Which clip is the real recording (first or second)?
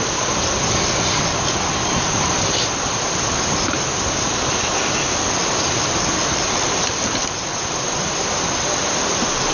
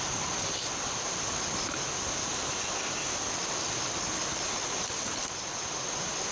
second